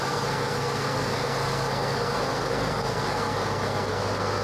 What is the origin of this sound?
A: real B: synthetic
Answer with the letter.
B